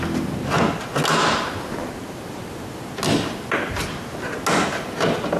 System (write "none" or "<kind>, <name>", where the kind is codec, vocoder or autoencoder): none